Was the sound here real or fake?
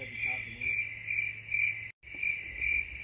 real